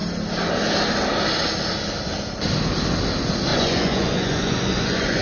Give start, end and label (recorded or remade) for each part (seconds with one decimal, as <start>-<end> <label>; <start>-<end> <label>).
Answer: 0.0-3.5 recorded; 3.5-5.2 remade